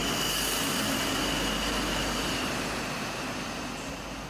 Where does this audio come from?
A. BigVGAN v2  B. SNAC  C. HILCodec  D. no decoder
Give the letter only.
D